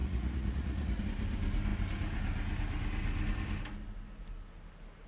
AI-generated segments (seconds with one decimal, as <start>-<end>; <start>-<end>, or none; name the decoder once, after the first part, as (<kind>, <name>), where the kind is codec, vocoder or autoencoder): 0.0-1.0 (vocoder, Vocos)